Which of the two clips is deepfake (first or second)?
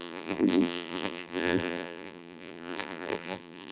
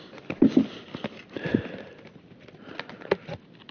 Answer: first